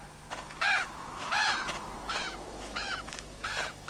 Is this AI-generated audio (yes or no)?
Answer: yes